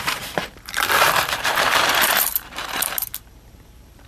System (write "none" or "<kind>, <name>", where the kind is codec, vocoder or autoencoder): vocoder, BigVGAN v2